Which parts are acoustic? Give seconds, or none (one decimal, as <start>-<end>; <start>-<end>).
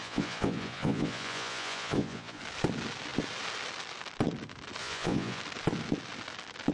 2.4-4.8; 5.4-6.7